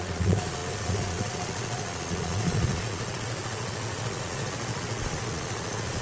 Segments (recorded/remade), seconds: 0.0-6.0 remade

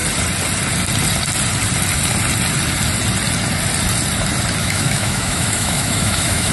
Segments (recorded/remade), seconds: 0.0-4.6 recorded; 4.6-6.5 remade

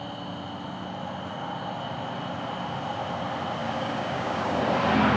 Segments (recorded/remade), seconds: 0.0-3.6 recorded; 3.6-4.6 remade; 4.6-5.2 recorded

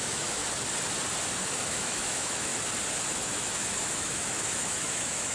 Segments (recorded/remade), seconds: 0.0-0.4 remade; 0.4-1.5 recorded; 1.5-2.5 remade; 2.5-3.1 recorded; 3.1-5.3 remade